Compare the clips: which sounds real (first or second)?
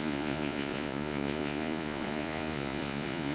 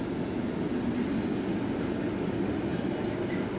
second